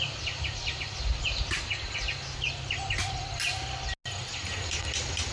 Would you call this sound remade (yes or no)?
no